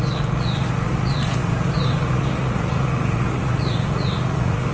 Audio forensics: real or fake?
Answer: fake